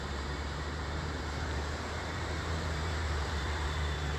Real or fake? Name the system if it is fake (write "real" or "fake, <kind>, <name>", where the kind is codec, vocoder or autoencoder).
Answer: fake, vocoder, BigVGAN v2